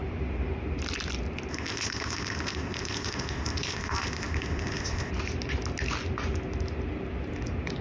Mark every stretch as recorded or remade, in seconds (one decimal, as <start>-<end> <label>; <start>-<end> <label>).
0.0-1.5 recorded; 1.5-5.1 remade; 5.1-7.8 recorded